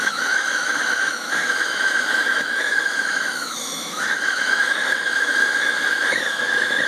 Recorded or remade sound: remade